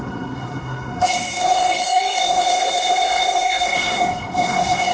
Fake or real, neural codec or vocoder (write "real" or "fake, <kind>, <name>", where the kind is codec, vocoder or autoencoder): fake, codec, SNAC